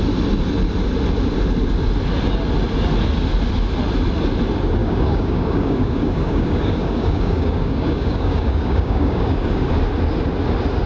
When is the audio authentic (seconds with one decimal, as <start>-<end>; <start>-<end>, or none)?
0.0-4.8; 9.7-10.9